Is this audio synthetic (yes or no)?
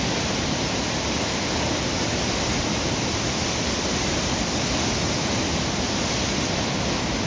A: no